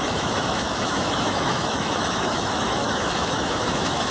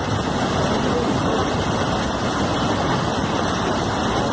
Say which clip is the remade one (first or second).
first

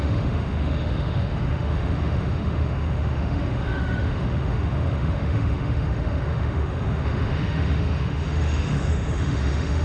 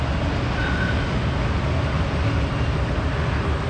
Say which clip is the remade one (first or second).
first